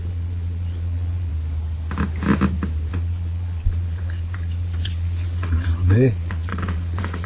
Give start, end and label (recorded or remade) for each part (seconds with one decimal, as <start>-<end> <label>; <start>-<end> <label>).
0.0-1.3 remade; 1.3-2.9 recorded; 2.9-7.3 remade